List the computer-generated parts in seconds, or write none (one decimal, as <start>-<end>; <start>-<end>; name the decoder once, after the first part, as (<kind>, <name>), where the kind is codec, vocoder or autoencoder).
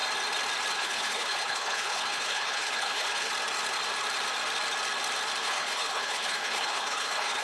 0.7-3.3 (codec, HILCodec); 5.4-7.4